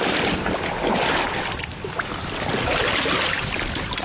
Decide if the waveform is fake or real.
real